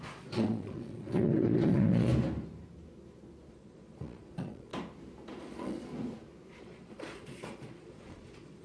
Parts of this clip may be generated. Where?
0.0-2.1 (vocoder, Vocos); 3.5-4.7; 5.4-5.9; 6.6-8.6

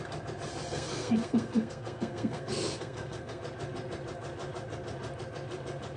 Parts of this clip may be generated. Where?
0.7-3.4 (codec, SNAC)

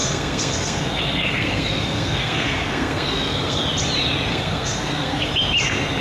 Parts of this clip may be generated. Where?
0.0-3.6 (codec, SNAC); 4.3-5.3

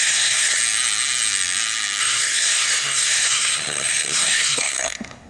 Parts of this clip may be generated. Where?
0.0-0.6 (codec, SNAC); 2.0-5.3

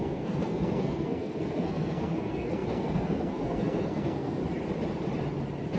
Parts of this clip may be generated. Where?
0.0-4.4 (codec, SNAC)

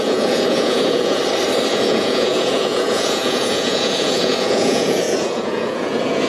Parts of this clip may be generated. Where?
0.0-1.2 (vocoder, Vocos); 1.7-6.3